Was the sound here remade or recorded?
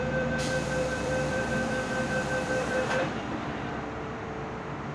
remade